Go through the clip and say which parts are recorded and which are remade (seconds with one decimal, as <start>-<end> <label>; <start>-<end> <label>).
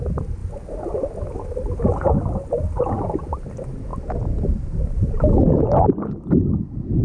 0.0-7.0 recorded